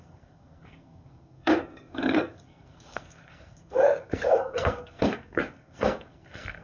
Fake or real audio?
fake